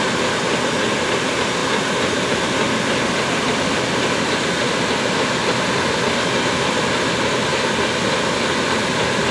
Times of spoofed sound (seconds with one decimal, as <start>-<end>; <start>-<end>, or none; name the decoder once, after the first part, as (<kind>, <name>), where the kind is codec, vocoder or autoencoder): none